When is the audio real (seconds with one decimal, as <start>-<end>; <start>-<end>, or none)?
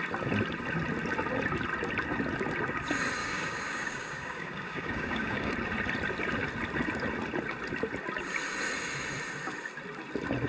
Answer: 0.0-3.2; 5.5-10.5